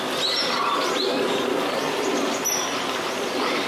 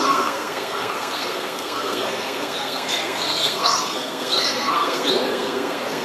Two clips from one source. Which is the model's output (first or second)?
second